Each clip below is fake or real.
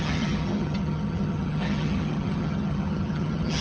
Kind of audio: fake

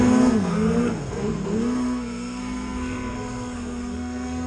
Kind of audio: fake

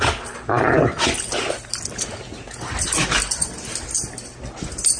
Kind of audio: real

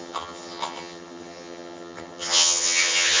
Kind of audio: fake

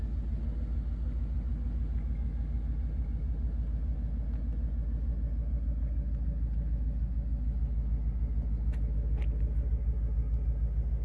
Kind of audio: real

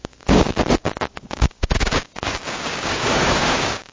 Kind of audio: fake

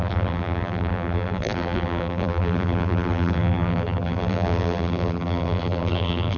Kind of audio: fake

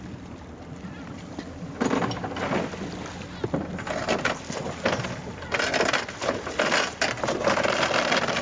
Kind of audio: real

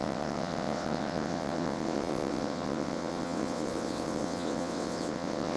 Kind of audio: fake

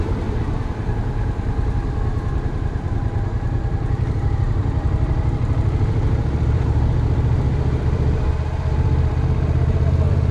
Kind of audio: fake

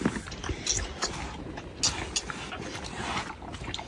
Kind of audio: real